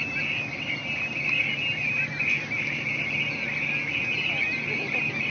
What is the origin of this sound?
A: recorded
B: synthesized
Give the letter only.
A